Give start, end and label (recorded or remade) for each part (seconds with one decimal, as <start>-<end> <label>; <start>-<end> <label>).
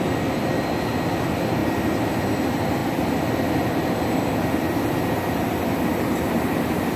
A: 0.0-7.0 recorded